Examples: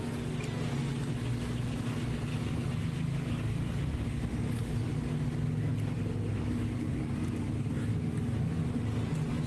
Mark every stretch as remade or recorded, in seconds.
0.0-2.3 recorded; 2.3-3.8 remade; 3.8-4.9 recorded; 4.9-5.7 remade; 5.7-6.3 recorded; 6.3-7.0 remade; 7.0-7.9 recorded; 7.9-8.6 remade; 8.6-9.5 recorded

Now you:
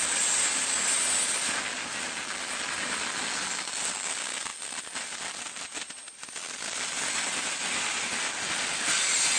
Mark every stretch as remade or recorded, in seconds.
0.0-9.4 recorded